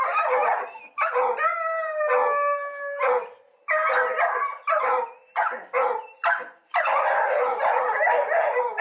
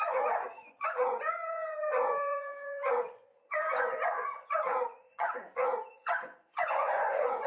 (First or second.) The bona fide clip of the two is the first